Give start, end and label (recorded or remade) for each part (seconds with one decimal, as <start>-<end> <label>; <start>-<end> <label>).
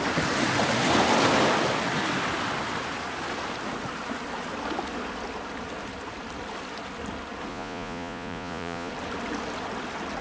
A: 0.0-7.5 recorded; 7.5-8.9 remade; 8.9-10.2 recorded